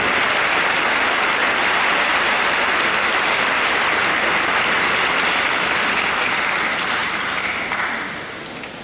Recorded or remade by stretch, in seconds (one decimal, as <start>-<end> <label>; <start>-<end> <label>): 0.0-7.0 recorded; 7.0-7.5 remade; 7.5-8.8 recorded